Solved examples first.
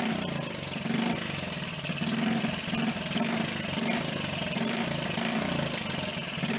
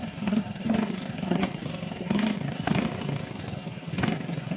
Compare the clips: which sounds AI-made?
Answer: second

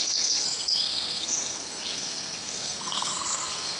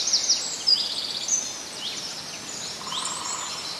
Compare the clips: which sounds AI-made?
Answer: first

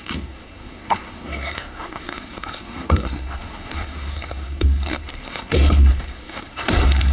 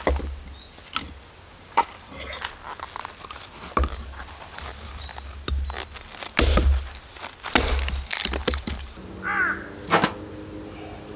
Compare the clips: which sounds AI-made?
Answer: first